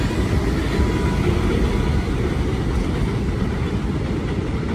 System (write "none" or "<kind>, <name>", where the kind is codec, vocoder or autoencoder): none